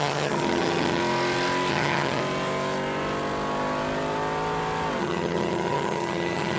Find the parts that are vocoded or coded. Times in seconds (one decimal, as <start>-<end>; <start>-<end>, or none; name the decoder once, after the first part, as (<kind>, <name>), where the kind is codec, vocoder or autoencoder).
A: 0.0-1.0 (vocoder, HiFi-GAN); 1.7-2.2; 5.0-6.6